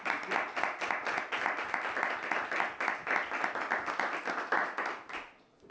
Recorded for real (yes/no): yes